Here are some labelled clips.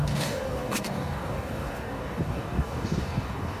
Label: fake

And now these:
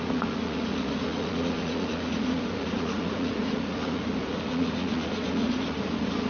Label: fake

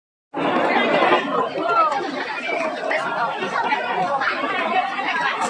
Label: real